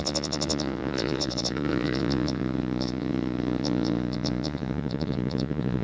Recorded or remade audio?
remade